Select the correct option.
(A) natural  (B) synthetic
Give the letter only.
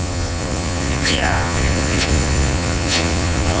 B